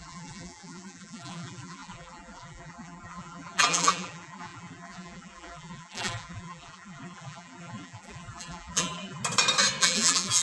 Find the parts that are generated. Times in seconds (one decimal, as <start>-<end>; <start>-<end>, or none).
0.0-9.2; 9.8-10.4